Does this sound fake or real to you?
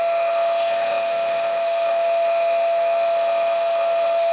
fake